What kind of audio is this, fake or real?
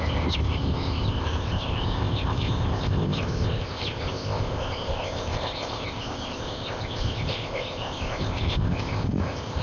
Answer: fake